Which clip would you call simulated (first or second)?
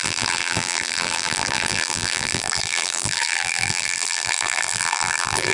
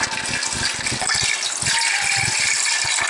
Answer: first